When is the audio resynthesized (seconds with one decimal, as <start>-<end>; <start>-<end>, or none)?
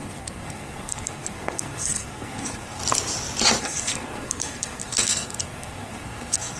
0.0-2.8; 3.6-6.6